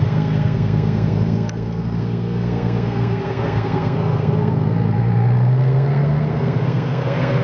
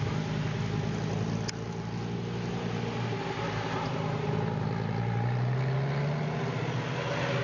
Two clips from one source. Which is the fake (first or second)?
first